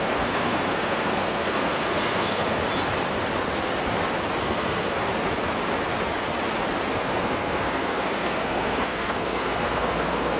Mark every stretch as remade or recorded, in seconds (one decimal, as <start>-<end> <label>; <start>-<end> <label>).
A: 0.0-2.6 remade; 2.6-4.4 recorded; 4.4-5.1 remade; 5.1-6.9 recorded; 6.9-10.4 remade